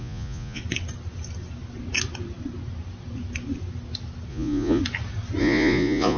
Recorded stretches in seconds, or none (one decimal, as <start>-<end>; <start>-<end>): 0.6-4.3; 4.8-5.4